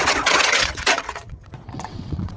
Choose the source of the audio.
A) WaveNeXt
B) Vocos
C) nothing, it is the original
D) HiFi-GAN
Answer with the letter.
A